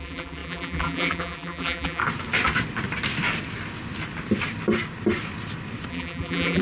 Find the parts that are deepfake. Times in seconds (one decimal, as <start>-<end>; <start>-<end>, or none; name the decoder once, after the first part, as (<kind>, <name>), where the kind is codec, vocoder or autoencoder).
0.0-2.0 (vocoder, BigVGAN v2); 5.9-6.6